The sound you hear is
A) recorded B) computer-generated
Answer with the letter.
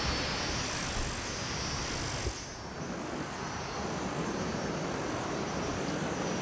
A